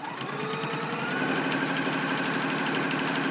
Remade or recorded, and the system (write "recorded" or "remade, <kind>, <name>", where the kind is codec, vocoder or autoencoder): recorded